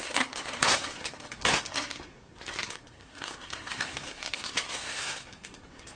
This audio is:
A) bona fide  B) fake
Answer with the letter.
B